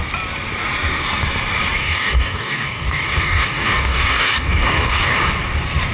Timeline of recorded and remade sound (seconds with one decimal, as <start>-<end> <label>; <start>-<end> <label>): 0.0-1.8 recorded; 1.8-5.2 remade; 5.2-5.9 recorded